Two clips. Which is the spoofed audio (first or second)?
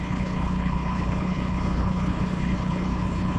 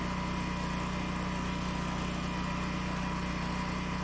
first